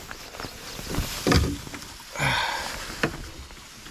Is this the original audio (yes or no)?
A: yes